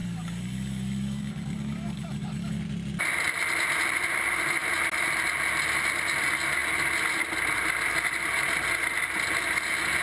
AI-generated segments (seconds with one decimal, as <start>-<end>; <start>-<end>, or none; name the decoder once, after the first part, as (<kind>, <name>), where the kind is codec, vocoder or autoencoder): 0.0-2.6 (codec, DAC)